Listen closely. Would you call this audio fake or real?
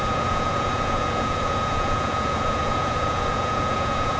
fake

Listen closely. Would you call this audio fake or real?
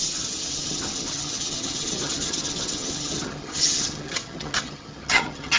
fake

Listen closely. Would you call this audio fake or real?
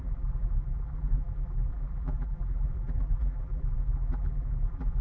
fake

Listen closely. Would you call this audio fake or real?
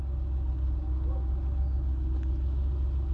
real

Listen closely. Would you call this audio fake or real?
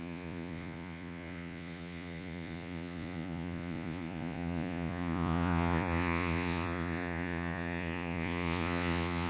fake